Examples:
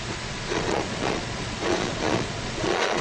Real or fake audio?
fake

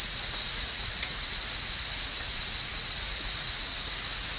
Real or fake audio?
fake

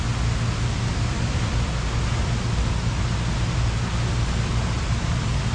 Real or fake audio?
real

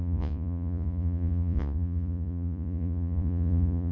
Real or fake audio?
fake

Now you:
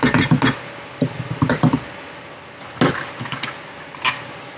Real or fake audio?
real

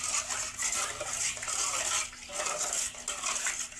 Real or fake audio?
real